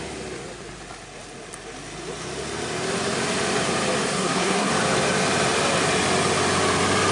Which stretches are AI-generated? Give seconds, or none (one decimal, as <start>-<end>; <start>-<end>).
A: 4.1-4.7